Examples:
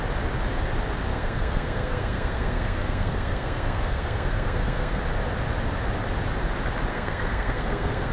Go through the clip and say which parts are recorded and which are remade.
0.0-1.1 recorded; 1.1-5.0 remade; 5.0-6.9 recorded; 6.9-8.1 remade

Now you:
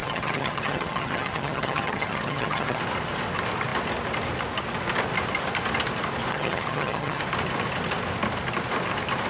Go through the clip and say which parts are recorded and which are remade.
0.0-2.8 remade; 2.8-6.3 recorded; 6.3-7.2 remade; 7.2-9.3 recorded

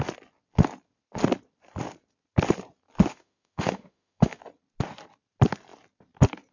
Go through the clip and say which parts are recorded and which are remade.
0.0-3.1 recorded; 3.1-4.4 remade; 4.4-6.5 recorded

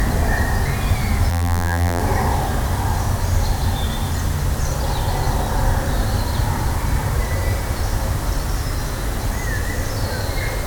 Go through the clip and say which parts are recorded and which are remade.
0.0-1.3 recorded; 1.3-2.0 remade; 2.0-10.7 recorded

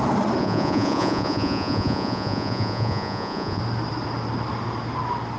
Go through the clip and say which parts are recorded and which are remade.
0.0-0.4 recorded; 0.4-3.6 remade; 3.6-5.4 recorded